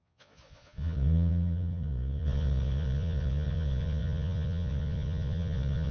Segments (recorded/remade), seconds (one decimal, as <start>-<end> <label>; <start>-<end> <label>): 0.0-5.9 remade